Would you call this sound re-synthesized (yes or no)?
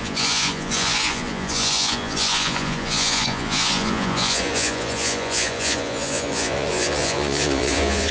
yes